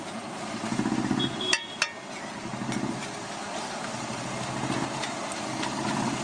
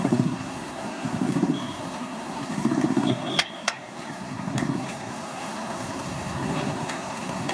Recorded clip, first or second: first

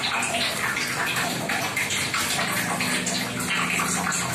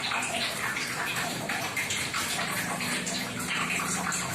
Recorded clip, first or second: first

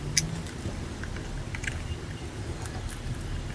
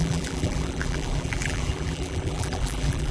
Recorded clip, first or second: first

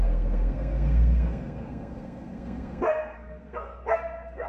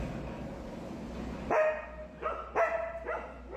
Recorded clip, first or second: second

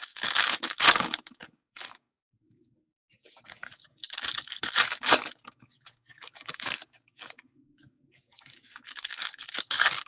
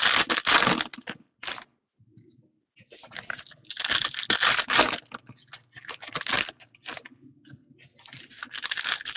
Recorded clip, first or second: second